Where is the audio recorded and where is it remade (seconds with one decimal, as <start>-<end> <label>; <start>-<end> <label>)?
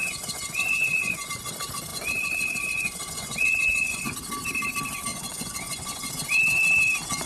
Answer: 0.0-1.3 remade; 1.3-1.9 recorded; 1.9-4.1 remade; 4.1-5.1 recorded; 5.1-6.1 remade; 6.1-7.3 recorded